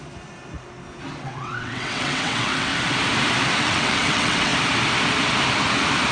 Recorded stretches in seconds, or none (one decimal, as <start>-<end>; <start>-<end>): 0.0-1.2; 2.7-3.6; 4.5-6.1